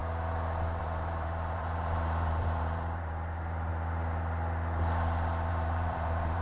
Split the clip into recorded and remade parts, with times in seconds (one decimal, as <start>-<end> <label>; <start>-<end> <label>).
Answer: 0.0-0.8 recorded; 0.8-3.7 remade; 3.7-5.5 recorded; 5.5-6.4 remade